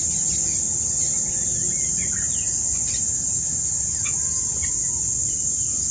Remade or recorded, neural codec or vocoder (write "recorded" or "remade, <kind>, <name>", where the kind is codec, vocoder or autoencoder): recorded